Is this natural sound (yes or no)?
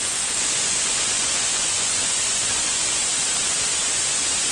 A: no